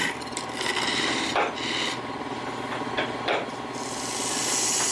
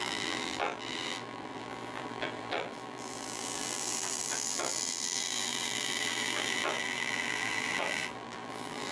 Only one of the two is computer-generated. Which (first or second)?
second